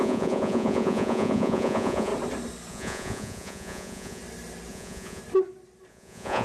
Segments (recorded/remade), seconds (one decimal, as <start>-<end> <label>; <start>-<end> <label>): 0.0-2.1 remade; 2.1-2.7 recorded; 2.7-4.2 remade; 4.2-4.7 recorded; 4.7-5.2 remade; 5.2-5.9 recorded; 5.9-6.4 remade